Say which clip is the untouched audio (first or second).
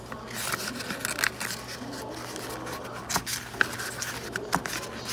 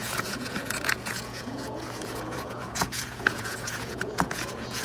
first